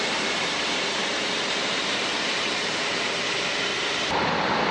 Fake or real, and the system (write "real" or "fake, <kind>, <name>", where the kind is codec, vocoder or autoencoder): fake, vocoder, BigVGAN v2